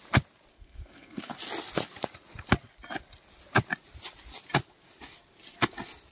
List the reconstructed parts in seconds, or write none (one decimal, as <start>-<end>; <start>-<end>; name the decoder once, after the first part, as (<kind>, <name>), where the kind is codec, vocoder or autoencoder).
0.5-1.3 (codec, SNAC)